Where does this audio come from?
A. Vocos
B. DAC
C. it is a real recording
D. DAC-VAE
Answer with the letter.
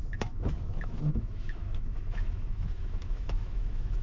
D